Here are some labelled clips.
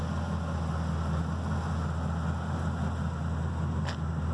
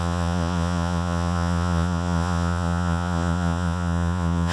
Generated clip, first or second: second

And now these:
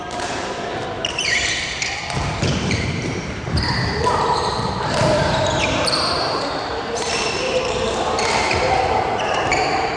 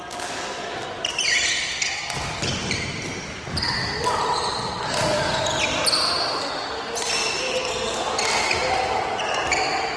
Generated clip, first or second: first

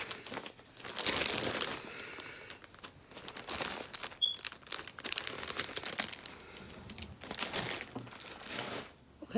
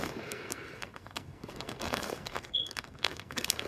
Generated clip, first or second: second